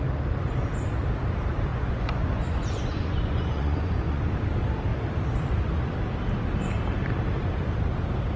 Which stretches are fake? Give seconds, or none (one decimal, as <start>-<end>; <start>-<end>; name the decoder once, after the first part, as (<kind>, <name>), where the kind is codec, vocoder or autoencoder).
1.7-4.3 (vocoder, Vocos)